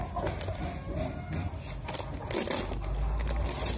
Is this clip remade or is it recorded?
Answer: recorded